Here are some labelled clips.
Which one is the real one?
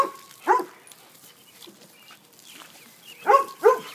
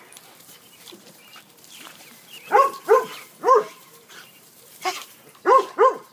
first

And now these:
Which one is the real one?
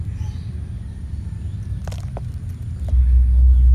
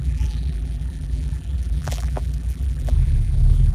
first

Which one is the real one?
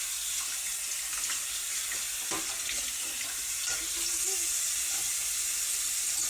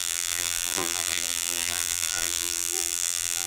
first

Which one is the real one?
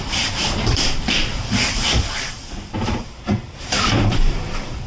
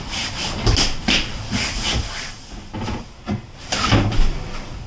second